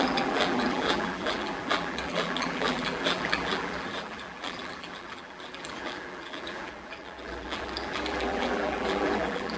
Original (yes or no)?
no